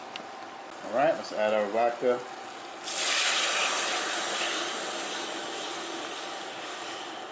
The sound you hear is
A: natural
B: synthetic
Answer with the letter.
A